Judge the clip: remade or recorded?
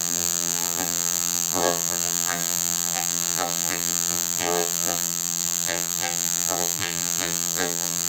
remade